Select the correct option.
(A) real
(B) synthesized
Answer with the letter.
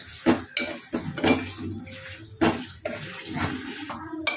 A